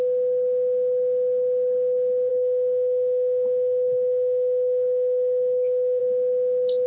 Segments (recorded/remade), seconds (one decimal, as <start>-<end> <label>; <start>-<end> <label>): 0.0-2.3 recorded; 2.3-6.0 remade; 6.0-6.9 recorded